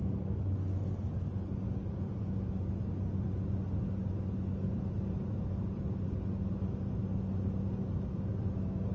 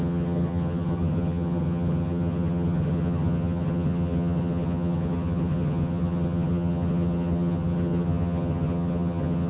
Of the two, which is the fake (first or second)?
second